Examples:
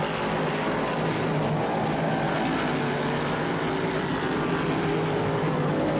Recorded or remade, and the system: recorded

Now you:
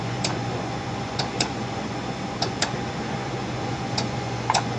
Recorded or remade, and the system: remade, vocoder, Vocos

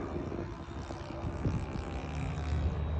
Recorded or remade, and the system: recorded